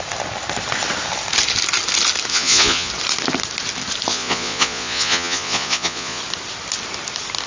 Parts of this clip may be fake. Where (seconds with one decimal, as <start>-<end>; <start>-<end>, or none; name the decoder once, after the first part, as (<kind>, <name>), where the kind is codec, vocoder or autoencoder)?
2.3-2.9 (vocoder, Vocos); 4.1-6.2